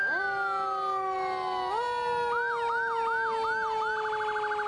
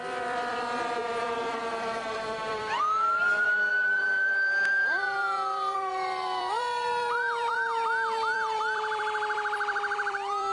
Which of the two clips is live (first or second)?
first